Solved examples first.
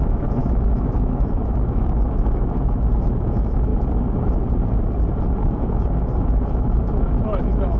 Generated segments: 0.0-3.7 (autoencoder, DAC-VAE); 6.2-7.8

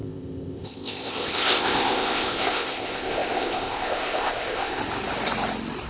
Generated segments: 0.0-4.8 (codec, ZipCodec)

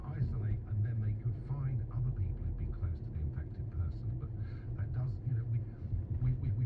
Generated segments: none

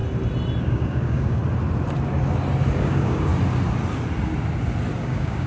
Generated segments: 0.6-1.4 (codec, DAC); 2.8-3.3; 5.0-5.5

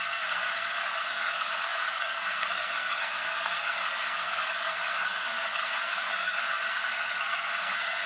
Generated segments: 0.0-8.1 (codec, SNAC)

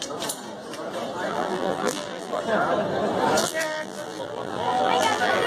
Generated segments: 1.3-2.4 (vocoder, BigVGAN v2); 3.4-5.5